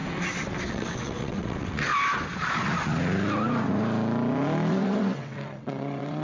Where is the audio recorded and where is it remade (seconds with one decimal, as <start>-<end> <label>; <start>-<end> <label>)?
0.0-0.7 recorded; 0.7-1.9 remade; 1.9-4.7 recorded; 4.7-6.2 remade